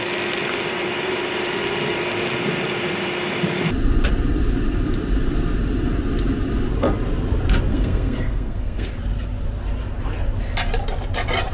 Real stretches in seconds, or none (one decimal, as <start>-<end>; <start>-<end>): 0.0-7.7; 8.9-11.5

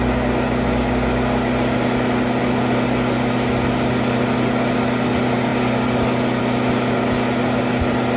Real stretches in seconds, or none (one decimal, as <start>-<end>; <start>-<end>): 0.0-8.2

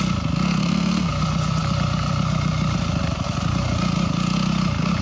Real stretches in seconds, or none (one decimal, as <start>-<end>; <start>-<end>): 0.0-0.6; 1.1-5.0

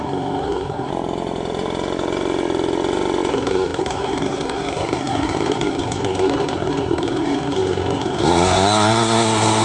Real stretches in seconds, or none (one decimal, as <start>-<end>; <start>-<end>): 0.9-3.3

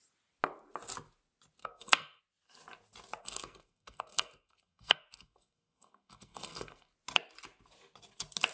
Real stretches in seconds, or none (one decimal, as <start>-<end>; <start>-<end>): 0.0-1.6; 2.2-3.2; 6.9-8.5

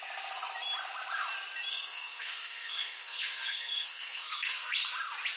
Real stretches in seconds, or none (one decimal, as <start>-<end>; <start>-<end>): 0.0-1.7; 4.9-5.4